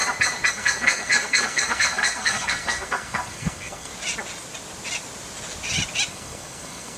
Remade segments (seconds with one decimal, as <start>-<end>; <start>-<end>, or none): 0.5-3.9; 6.1-7.0